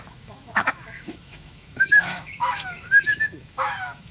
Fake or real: fake